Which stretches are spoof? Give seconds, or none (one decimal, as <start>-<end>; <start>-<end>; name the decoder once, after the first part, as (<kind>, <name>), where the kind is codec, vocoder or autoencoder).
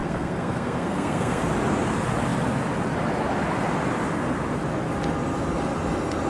0.0-1.4 (codec, SNAC)